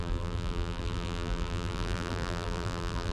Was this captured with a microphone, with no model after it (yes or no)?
no